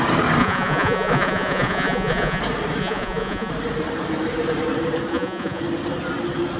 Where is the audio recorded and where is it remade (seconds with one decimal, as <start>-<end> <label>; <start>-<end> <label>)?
0.0-0.4 recorded; 0.4-2.4 remade; 2.4-2.8 recorded; 2.8-3.5 remade; 3.5-5.1 recorded; 5.1-5.6 remade; 5.6-6.6 recorded